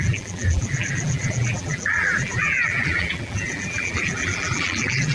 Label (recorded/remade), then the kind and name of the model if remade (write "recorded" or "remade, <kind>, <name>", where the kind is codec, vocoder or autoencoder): remade, vocoder, BigVGAN v2